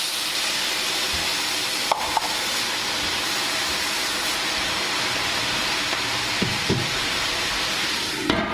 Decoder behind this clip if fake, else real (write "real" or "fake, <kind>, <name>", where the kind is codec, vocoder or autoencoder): fake, vocoder, BigVGAN v2